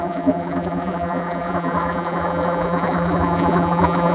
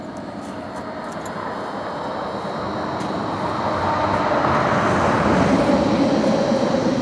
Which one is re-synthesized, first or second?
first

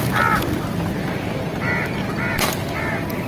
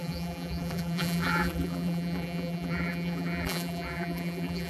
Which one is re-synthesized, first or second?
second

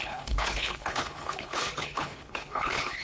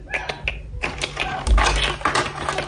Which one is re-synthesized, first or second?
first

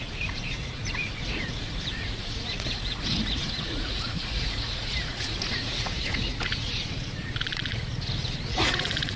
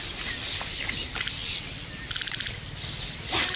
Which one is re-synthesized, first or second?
first